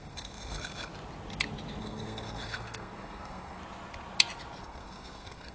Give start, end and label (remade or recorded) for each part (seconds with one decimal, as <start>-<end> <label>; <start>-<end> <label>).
0.0-0.9 remade; 0.9-1.8 recorded; 1.8-3.6 remade; 3.6-4.6 recorded; 4.6-5.5 remade